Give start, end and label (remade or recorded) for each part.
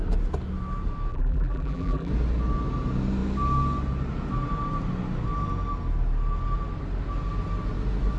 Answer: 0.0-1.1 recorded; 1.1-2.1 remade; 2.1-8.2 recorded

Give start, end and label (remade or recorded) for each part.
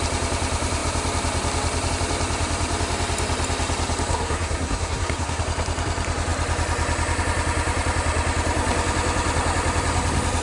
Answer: 0.0-4.1 recorded; 4.1-5.4 remade; 5.4-10.4 recorded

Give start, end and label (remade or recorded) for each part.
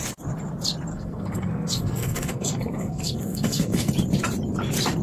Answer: 0.0-0.9 recorded; 0.9-3.9 remade; 3.9-5.0 recorded